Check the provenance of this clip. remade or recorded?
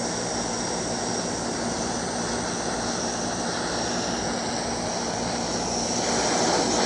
recorded